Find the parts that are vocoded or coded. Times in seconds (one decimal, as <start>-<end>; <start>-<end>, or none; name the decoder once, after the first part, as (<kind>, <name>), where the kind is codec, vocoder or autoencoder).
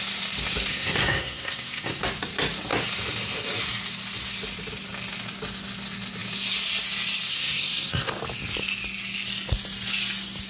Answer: 0.7-2.0 (codec, SNAC); 7.3-8.1